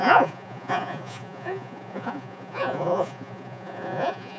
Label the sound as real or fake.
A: fake